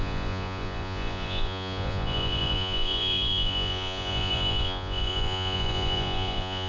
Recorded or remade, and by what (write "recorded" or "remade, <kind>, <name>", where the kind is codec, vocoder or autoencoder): remade, vocoder, Vocos